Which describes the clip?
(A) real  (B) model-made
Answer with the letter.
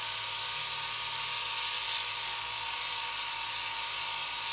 A